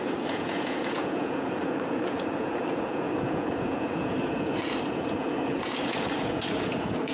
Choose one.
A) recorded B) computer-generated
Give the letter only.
B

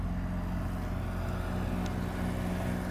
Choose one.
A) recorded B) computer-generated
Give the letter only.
A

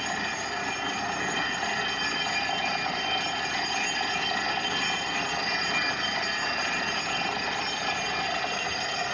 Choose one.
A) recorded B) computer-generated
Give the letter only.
A